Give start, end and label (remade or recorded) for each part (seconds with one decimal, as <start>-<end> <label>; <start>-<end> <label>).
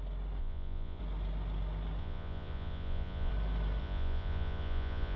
0.0-0.4 recorded; 0.4-1.0 remade; 1.0-2.0 recorded; 2.0-3.3 remade; 3.3-3.8 recorded; 3.8-5.2 remade